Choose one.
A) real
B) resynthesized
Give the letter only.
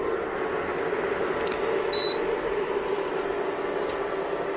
A